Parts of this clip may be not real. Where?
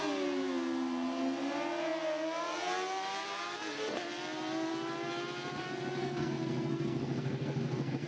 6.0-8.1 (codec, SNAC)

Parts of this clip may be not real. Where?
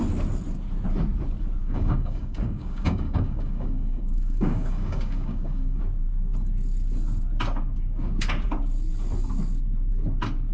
1.6-5.8 (codec, DAC)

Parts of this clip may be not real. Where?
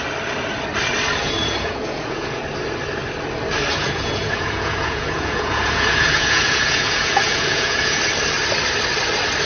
1.2-2.4 (vocoder, Vocos); 3.7-8.0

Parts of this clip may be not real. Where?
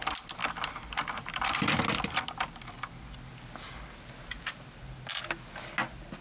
none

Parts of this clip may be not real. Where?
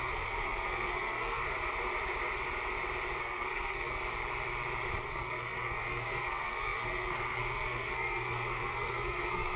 0.0-1.4 (codec, SNAC); 3.2-4.0; 5.1-9.6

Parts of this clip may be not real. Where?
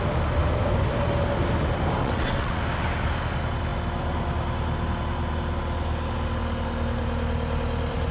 2.0-2.6 (vocoder, WaveNeXt)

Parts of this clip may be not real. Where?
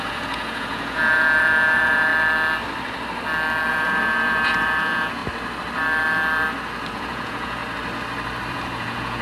0.0-2.1 (vocoder, Vocos); 3.7-5.2; 6.9-7.6; 8.5-9.2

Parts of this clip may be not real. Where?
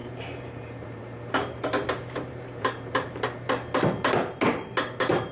0.0-3.2 (vocoder, BigVGAN v2)